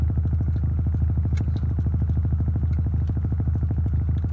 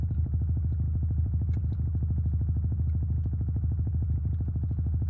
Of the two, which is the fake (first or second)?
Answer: second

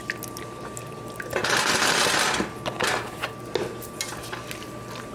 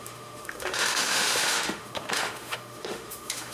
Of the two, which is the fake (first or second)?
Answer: second